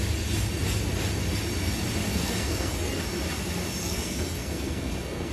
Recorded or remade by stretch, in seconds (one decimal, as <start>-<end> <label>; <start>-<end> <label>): 0.0-2.1 recorded; 2.1-3.0 remade; 3.0-3.8 recorded; 3.8-5.3 remade